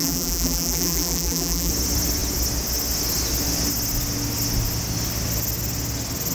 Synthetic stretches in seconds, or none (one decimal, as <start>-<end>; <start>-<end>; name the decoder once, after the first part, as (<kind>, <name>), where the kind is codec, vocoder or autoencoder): 0.0-1.7 (vocoder, BigVGAN v2)